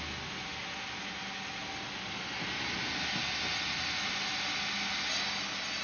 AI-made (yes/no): no